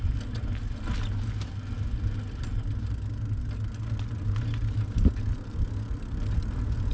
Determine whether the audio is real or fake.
real